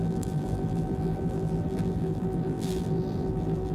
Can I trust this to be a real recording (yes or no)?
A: no